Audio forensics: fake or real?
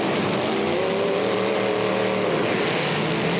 real